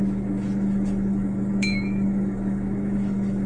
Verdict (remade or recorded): remade